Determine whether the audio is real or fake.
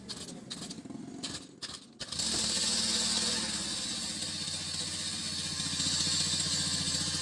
real